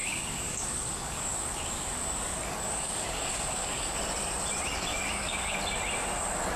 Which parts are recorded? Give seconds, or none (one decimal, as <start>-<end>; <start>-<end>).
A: 4.0-4.9; 5.6-6.6